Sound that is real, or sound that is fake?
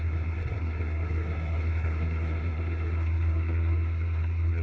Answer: fake